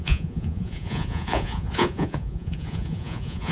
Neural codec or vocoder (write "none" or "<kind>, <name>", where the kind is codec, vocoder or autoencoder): vocoder, Vocos